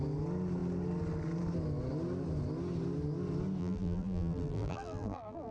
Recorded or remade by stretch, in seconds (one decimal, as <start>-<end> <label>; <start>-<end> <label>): 0.0-3.6 recorded; 3.6-5.5 remade